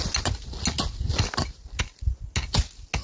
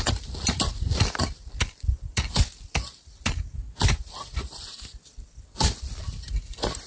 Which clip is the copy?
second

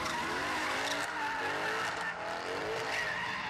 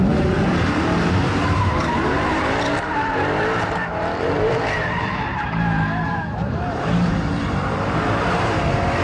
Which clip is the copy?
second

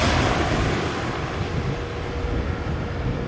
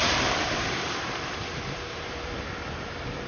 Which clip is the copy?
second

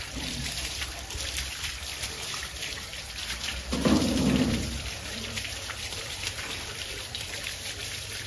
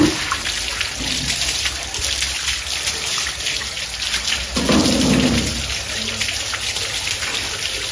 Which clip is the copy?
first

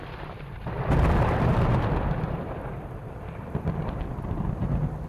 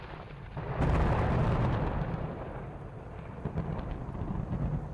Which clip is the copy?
first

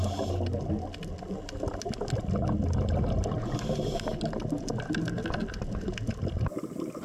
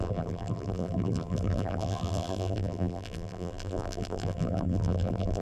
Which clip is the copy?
second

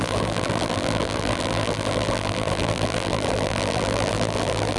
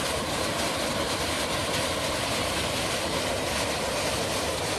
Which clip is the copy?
first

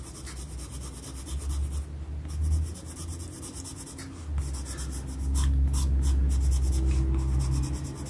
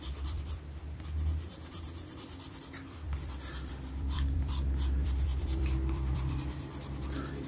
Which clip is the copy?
second